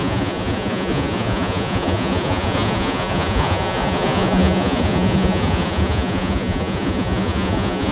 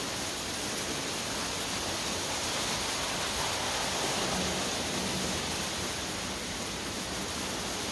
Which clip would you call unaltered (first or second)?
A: second